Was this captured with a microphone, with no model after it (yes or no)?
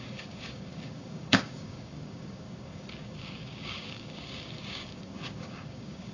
no